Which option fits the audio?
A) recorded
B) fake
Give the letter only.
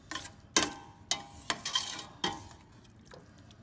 A